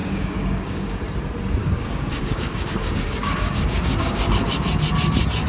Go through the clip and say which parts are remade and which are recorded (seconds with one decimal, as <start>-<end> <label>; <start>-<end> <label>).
0.0-1.0 remade; 1.0-1.6 recorded; 1.6-4.3 remade; 4.3-5.5 recorded